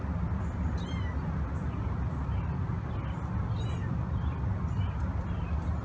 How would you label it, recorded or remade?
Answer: recorded